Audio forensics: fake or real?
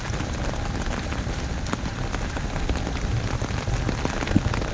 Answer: real